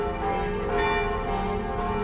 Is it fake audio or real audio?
real